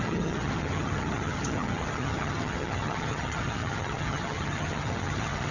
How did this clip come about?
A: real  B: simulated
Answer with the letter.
B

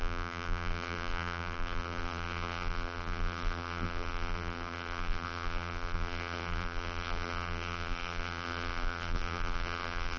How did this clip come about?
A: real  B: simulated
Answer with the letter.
B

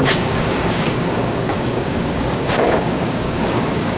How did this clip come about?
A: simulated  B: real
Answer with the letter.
A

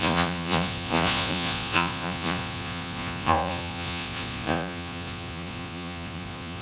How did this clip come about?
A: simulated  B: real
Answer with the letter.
A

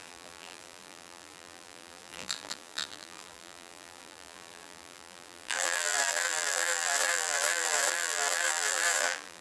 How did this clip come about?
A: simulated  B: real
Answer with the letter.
A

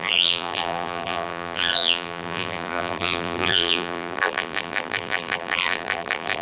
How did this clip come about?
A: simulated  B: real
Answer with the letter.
A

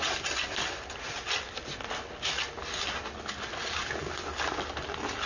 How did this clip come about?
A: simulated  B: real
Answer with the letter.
B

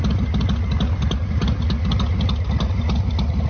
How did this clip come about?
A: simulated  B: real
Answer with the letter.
B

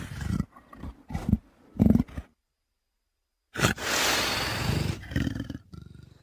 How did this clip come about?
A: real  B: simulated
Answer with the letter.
A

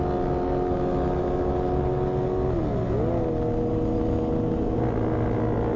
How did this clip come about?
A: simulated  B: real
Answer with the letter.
B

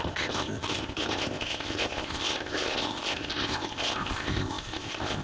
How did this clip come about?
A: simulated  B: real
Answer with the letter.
A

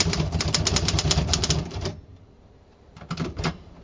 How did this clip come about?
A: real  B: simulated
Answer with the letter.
B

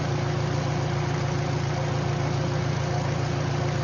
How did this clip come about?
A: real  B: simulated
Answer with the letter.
A